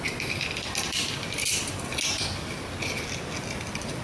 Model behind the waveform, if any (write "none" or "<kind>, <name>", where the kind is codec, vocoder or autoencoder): none